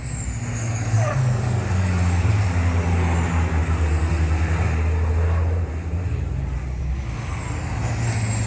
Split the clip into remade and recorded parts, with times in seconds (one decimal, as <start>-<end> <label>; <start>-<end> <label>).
0.0-0.6 recorded; 0.6-2.3 remade; 2.3-8.5 recorded